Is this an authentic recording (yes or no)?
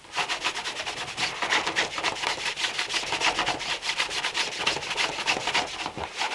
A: yes